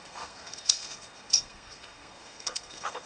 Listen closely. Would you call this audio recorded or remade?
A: remade